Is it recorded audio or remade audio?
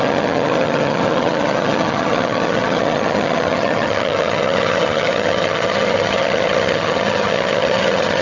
remade